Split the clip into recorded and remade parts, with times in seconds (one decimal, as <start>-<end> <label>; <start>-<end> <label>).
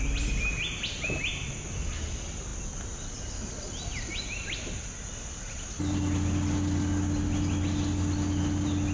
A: 0.0-8.9 recorded